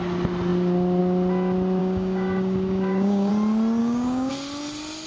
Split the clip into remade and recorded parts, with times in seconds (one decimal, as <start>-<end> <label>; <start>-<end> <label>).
0.0-1.8 recorded; 1.8-3.3 remade; 3.3-3.8 recorded; 3.8-4.3 remade; 4.3-5.1 recorded